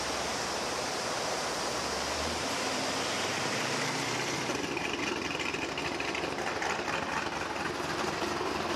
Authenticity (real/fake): fake